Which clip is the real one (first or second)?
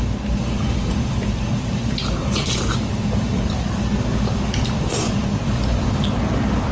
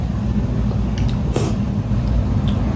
second